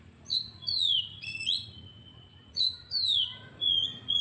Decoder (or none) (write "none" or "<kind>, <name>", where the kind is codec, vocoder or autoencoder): vocoder, Vocos